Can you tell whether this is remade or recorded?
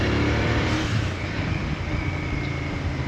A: remade